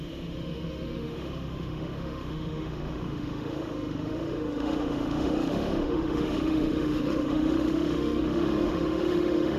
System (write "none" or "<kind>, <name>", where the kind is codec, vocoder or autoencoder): autoencoder, DAC-VAE